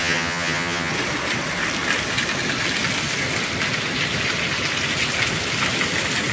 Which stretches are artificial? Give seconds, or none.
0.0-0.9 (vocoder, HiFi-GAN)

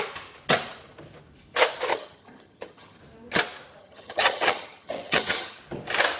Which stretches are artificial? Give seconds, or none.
1.9-3.0 (vocoder, HiFi-GAN); 3.8-5.6